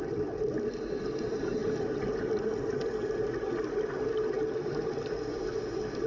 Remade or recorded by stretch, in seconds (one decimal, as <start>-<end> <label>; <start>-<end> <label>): 0.0-6.1 recorded